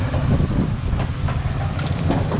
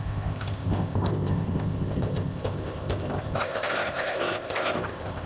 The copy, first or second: second